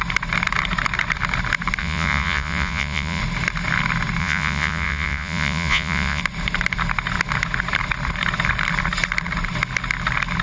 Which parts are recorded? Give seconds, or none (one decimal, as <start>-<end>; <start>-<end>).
0.0-1.8; 3.2-4.2; 6.2-10.4